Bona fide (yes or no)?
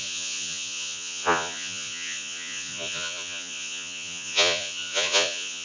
no